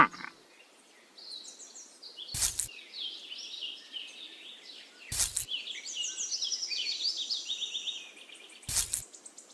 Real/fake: real